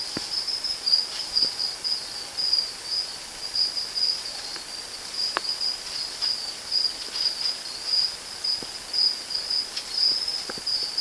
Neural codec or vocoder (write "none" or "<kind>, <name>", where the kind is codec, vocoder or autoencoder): none